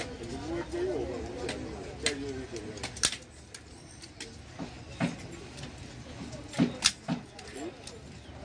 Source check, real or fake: real